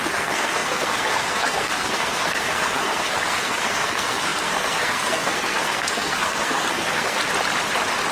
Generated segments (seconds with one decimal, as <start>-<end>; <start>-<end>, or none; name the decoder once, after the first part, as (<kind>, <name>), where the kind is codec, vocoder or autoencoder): 0.0-7.2 (codec, SNAC)